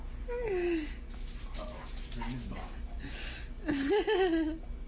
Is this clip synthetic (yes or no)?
no